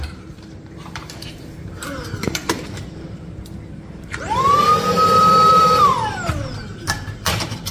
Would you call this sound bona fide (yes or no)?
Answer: no